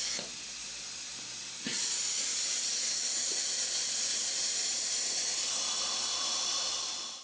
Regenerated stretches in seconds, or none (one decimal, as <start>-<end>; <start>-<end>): 4.1-5.1